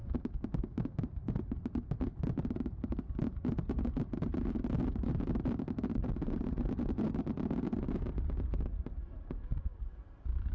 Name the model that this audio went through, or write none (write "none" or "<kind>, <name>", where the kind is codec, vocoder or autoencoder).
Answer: none